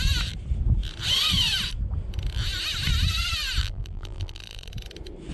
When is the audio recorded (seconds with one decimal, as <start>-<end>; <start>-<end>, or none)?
0.0-3.6; 4.7-5.3